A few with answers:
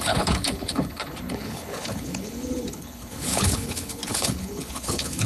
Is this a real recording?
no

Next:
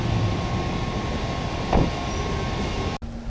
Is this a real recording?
yes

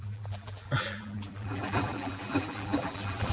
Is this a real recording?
no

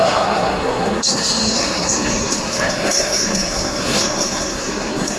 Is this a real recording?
no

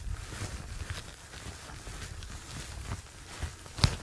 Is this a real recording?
yes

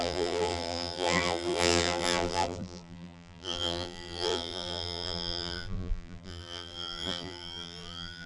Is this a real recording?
no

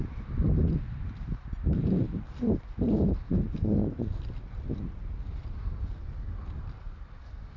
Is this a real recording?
yes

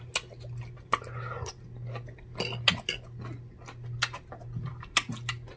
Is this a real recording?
yes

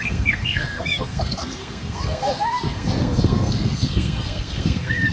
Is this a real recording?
no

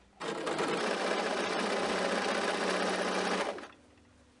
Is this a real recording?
yes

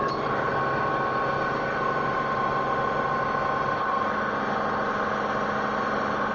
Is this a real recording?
yes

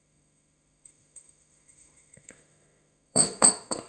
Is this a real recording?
no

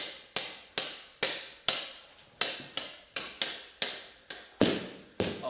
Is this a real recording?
yes